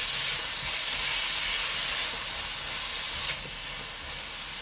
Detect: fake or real real